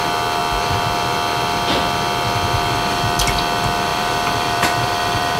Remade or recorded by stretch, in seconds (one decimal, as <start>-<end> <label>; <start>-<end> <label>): 0.0-3.9 recorded; 3.9-5.4 remade